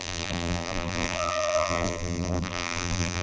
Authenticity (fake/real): fake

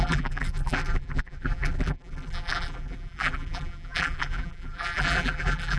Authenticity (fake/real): fake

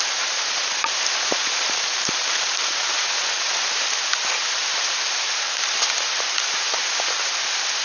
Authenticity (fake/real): fake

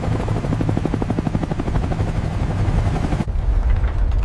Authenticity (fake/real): real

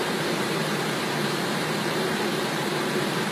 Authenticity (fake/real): fake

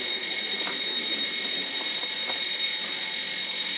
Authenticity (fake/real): real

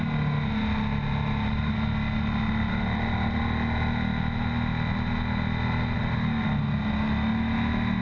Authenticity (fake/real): real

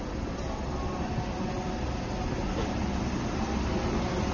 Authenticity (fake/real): real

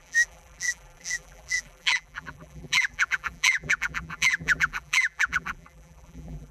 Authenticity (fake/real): fake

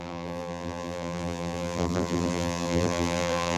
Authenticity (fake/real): fake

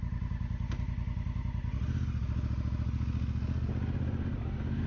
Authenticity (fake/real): real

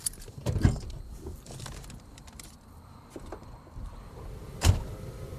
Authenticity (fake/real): fake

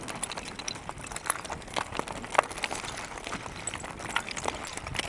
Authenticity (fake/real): real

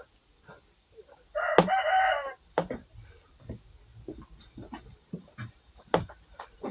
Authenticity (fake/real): real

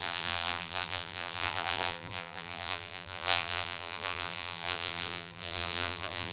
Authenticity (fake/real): fake